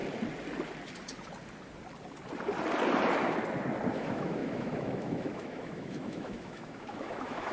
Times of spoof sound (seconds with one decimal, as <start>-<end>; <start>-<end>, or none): 3.9-7.5